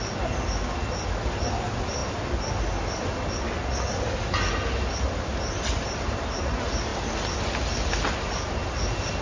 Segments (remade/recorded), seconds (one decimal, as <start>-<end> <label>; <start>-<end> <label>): 0.0-9.2 recorded